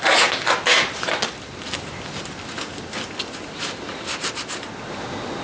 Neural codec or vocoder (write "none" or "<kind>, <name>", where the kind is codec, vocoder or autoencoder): none